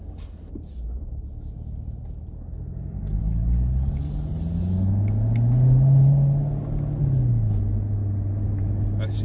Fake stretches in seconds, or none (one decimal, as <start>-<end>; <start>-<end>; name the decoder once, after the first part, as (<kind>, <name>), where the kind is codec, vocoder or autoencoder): 0.0-0.5 (codec, HILCodec); 3.2-3.9